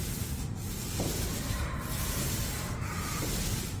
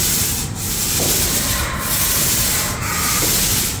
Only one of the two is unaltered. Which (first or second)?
first